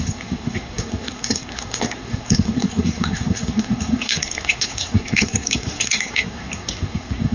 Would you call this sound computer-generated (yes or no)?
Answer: yes